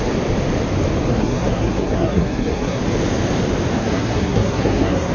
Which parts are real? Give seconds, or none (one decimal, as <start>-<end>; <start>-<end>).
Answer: 0.0-1.1; 2.8-3.8